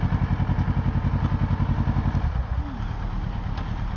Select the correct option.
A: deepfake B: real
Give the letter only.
B